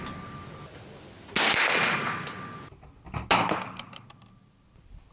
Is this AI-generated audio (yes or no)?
no